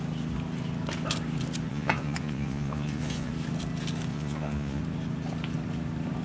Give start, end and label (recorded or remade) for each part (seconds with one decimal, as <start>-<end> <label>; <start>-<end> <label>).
0.0-1.7 recorded; 1.7-3.3 remade; 3.3-4.1 recorded; 4.1-4.8 remade; 4.8-6.2 recorded